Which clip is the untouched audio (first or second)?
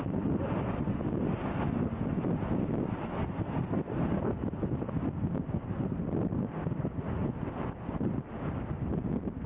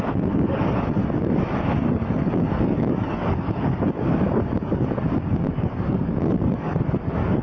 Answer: first